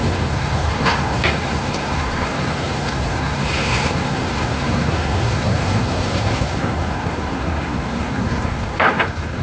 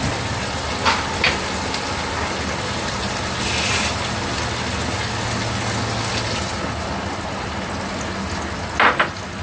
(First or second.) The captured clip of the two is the second